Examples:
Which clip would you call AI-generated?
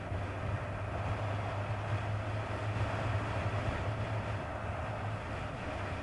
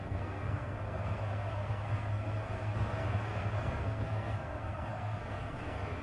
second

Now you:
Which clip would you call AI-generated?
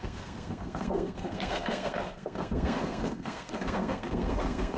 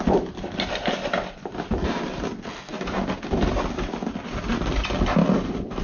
first